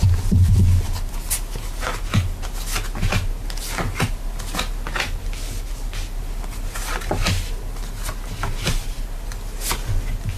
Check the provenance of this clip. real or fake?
real